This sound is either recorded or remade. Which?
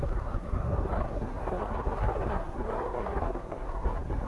remade